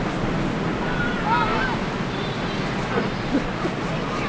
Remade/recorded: recorded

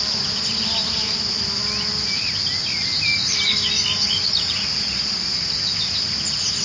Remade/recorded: recorded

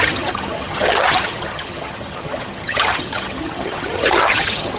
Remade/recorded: remade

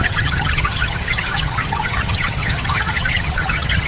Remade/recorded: remade